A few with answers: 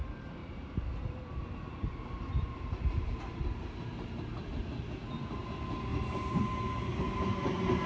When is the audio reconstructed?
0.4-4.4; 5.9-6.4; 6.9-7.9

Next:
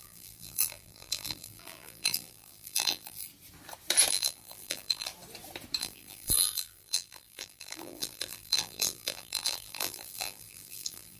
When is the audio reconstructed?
0.0-3.3; 4.1-5.1; 5.8-11.2

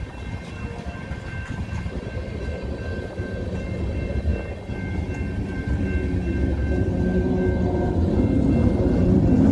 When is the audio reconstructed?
none

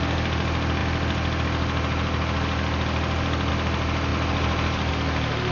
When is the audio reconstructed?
4.1-4.9